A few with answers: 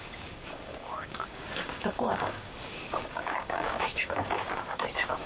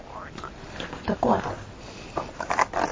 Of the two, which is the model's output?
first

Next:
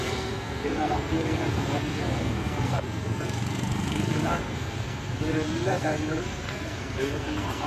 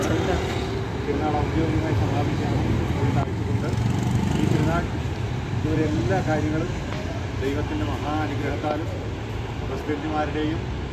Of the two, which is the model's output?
first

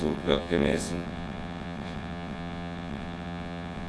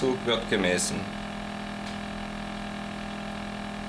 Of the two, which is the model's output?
first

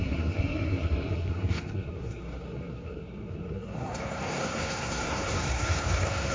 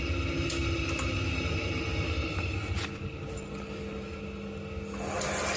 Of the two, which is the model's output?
first